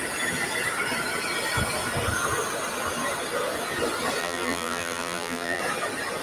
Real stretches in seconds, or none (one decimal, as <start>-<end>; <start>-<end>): 0.0-4.2; 5.6-6.2